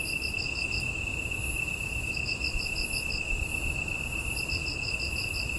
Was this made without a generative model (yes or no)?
yes